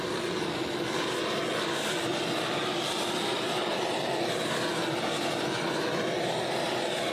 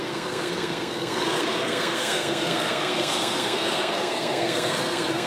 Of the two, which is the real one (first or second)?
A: first